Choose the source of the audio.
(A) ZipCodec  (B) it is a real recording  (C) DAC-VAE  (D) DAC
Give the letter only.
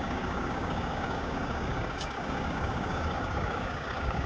D